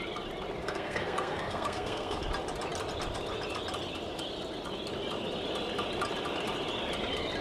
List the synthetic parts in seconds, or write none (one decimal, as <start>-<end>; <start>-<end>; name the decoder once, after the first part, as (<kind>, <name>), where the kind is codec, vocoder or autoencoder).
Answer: 0.6-2.2 (codec, SNAC)